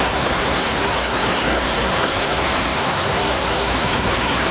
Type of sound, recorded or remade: remade